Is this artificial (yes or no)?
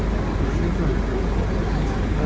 no